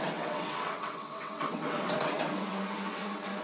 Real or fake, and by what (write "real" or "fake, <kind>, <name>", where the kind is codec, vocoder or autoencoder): fake, vocoder, WaveNeXt